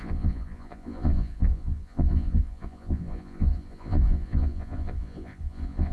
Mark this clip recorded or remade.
remade